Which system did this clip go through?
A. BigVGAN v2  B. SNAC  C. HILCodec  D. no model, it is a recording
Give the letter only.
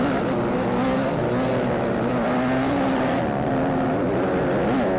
D